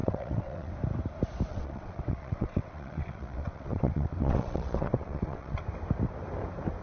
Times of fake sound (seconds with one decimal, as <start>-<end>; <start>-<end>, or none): 0.0-0.7; 1.5-5.6

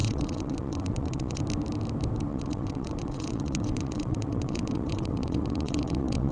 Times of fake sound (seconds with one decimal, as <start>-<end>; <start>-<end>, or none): 0.0-1.4; 2.3-6.3

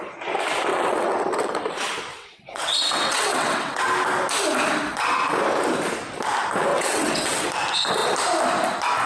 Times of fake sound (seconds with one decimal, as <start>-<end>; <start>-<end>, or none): 0.7-1.6; 2.1-3.8; 6.7-7.5

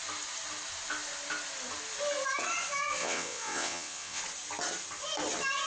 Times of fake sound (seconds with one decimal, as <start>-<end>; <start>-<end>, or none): 3.0-4.2

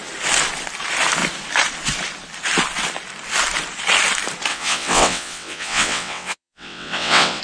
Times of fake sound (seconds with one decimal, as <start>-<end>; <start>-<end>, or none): 4.5-7.4

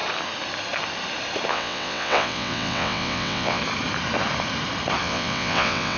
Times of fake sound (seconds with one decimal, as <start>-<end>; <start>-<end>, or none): 1.5-3.6; 5.0-6.0

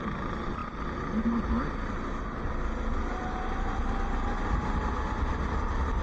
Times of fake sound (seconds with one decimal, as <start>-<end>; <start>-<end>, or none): none

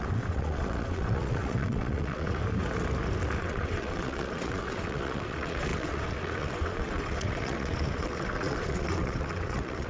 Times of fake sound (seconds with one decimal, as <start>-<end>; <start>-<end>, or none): 0.0-2.4; 3.4-9.9